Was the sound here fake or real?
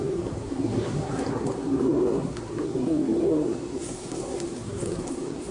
fake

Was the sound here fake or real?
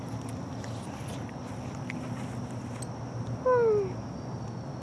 real